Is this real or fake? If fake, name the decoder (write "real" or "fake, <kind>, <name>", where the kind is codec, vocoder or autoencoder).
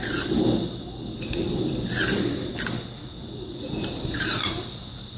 real